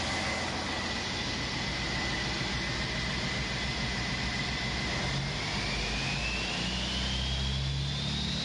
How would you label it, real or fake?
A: real